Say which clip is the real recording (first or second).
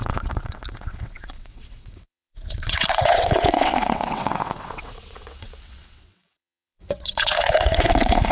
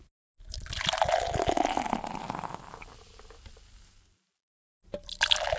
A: second